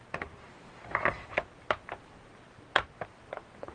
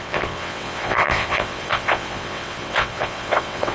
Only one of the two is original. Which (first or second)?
first